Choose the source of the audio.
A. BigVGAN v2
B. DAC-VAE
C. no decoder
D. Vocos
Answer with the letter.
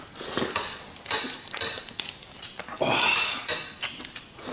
C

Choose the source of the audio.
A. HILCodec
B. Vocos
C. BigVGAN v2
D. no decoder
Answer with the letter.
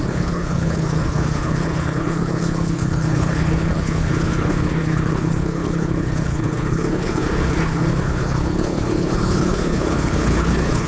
A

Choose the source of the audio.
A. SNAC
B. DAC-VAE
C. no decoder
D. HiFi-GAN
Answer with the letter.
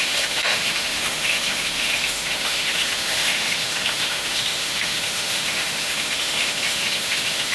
B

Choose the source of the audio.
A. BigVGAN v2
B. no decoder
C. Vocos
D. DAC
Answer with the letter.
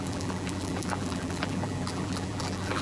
A